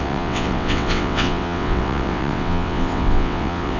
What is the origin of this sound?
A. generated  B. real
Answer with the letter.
A